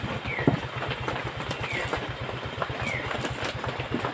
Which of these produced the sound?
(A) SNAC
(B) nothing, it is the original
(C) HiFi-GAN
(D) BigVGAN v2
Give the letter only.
B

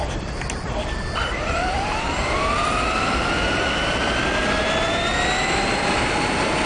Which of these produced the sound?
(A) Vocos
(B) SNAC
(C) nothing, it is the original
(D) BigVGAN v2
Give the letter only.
C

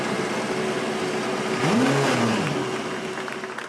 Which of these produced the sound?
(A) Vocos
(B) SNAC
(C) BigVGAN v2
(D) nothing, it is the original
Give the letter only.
D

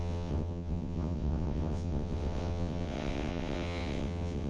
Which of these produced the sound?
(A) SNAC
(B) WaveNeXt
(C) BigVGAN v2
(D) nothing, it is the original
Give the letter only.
B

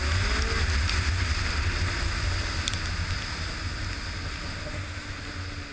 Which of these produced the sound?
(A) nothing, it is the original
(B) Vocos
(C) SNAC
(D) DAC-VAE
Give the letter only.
A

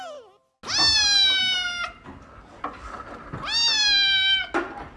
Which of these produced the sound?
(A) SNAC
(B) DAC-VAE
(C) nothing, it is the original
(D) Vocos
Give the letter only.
C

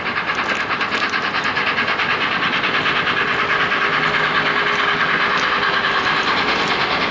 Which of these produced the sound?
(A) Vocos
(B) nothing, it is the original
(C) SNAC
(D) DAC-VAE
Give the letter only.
B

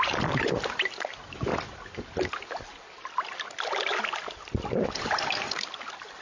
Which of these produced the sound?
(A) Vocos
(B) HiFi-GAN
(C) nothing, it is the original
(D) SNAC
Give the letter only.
C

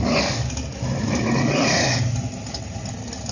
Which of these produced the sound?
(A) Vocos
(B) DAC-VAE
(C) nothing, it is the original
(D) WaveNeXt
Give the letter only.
C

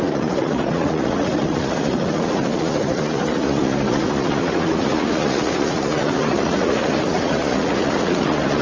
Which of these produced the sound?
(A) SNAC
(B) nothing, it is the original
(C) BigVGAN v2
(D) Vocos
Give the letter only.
D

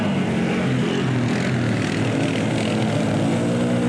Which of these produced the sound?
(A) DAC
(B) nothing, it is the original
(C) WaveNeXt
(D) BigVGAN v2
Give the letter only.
B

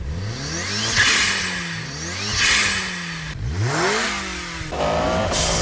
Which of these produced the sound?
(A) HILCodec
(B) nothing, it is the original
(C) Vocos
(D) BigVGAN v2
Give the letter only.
B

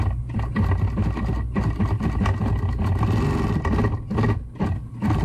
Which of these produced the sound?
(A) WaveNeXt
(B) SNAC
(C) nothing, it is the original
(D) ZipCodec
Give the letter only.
C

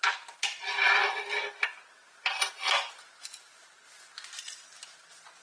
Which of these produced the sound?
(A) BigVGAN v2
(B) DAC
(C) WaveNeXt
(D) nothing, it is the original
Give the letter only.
D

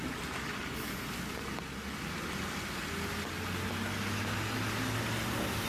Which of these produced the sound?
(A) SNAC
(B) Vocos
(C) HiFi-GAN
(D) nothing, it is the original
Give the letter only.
D